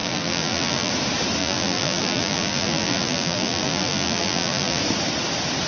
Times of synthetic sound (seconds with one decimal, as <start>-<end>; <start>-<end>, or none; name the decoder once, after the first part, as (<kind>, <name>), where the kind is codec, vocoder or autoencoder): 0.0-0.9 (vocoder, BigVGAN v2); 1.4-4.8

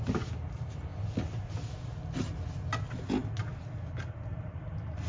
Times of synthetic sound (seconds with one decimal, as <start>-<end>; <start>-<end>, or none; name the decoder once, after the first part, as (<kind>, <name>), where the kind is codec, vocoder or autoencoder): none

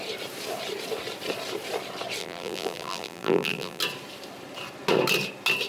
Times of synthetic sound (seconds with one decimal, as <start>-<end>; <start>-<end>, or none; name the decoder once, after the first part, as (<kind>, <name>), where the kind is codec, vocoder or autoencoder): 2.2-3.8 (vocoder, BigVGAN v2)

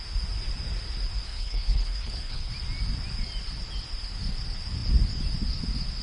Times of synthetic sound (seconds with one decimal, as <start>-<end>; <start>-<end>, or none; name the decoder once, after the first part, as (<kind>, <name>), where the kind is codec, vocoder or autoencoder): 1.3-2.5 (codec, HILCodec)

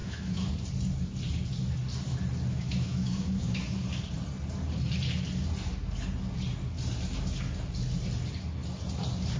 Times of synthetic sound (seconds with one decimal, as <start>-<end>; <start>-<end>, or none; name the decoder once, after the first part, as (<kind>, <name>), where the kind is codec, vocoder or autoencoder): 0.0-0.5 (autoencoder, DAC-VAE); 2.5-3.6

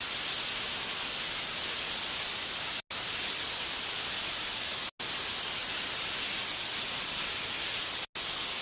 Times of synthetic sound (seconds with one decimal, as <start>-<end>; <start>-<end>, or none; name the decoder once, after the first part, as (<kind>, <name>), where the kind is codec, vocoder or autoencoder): none

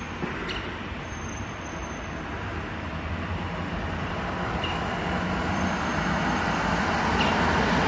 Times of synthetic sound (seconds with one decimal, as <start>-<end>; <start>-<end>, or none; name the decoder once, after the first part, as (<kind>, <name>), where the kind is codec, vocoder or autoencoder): 0.0-1.8 (vocoder, BigVGAN v2); 2.7-7.9

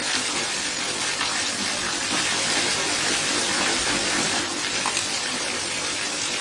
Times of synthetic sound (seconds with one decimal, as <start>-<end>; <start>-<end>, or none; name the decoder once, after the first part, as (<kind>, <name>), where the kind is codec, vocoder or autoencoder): 0.0-6.4 (vocoder, BigVGAN v2)